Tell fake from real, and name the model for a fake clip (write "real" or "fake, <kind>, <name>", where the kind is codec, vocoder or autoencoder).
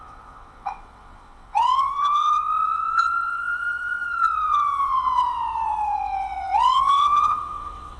fake, vocoder, WaveNeXt